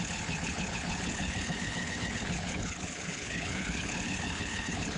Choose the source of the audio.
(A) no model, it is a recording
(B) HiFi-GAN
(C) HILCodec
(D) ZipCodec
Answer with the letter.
C